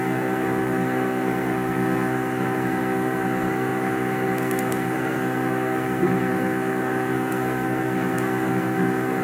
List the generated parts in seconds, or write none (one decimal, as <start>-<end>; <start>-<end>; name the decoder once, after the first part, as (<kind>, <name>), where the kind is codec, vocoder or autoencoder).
0.0-9.2 (codec, SNAC)